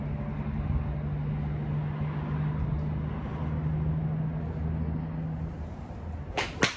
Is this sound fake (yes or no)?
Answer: no